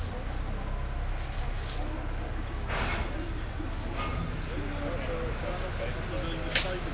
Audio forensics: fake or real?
real